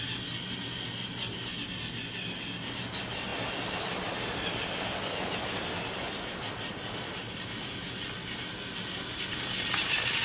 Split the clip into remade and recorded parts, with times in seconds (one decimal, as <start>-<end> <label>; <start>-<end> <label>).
0.0-10.2 recorded